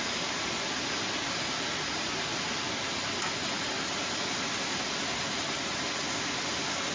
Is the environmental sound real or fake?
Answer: real